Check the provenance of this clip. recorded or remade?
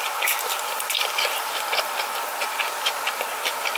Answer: recorded